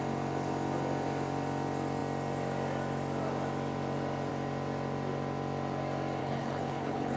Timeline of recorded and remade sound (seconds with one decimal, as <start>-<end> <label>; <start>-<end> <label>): 0.0-6.2 recorded; 6.2-7.2 remade